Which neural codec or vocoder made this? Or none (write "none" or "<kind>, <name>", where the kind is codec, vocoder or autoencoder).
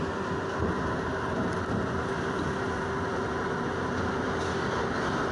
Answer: none